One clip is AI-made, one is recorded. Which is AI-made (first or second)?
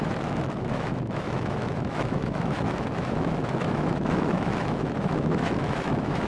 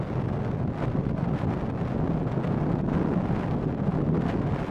first